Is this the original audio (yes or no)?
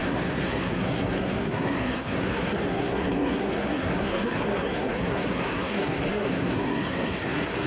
no